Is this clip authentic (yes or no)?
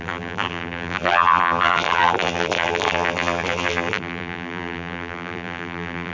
no